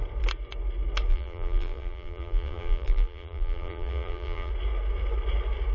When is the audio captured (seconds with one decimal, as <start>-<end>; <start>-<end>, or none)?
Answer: 0.0-1.1; 4.5-5.7